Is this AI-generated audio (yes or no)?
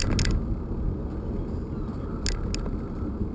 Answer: no